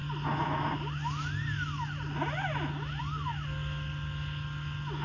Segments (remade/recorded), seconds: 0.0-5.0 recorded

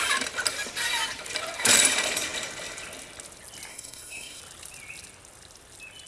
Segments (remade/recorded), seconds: 0.0-3.7 recorded; 3.7-4.4 remade; 4.4-6.1 recorded

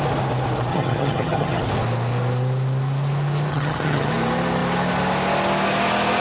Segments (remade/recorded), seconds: 0.0-0.7 recorded; 0.7-1.6 remade; 1.6-3.5 recorded; 3.5-4.1 remade; 4.1-6.2 recorded

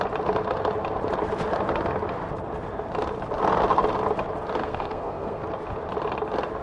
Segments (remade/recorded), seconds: 0.0-4.6 recorded; 4.6-5.4 remade; 5.4-6.6 recorded

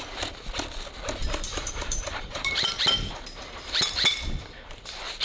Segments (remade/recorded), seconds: 0.0-1.2 recorded; 1.2-2.7 remade; 2.7-5.2 recorded

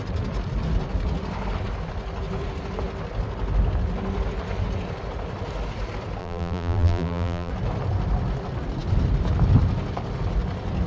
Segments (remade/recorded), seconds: 0.0-6.2 recorded; 6.2-7.5 remade; 7.5-10.9 recorded

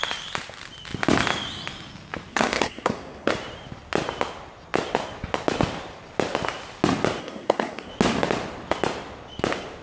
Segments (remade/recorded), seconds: 0.0-2.3 recorded; 2.3-3.3 remade; 3.3-7.2 recorded; 7.2-7.9 remade; 7.9-9.8 recorded